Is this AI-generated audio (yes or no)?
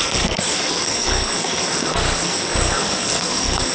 yes